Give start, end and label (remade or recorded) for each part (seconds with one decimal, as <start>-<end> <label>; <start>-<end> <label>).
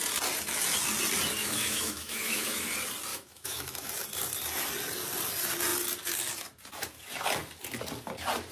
0.0-1.4 recorded; 1.4-2.7 remade; 2.7-3.1 recorded; 3.1-3.9 remade; 3.9-8.5 recorded